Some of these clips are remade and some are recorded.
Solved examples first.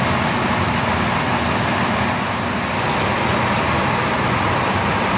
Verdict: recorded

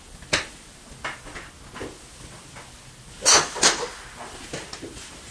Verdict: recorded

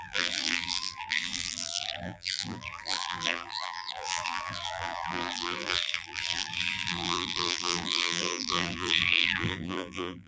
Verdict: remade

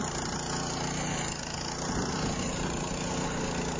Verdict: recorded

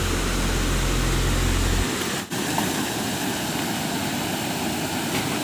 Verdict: recorded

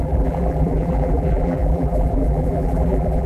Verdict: remade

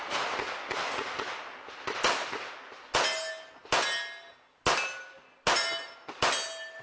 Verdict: recorded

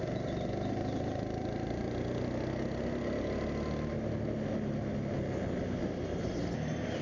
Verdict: recorded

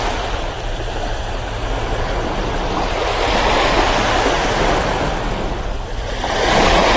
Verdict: recorded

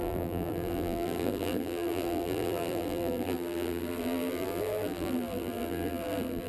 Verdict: remade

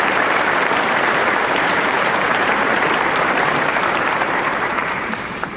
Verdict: remade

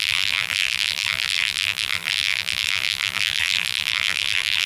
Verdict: remade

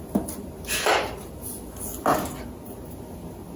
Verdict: recorded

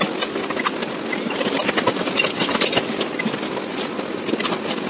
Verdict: recorded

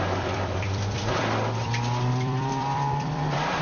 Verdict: remade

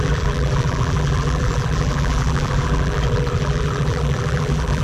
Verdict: remade